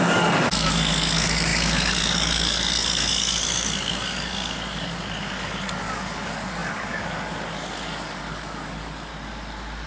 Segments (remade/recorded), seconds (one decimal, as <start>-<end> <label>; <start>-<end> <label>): 0.0-9.1 remade; 9.1-9.9 recorded